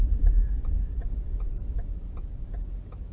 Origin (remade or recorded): recorded